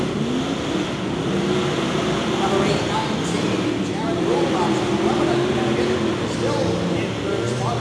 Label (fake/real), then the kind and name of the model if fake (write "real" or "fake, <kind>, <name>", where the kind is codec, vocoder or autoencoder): real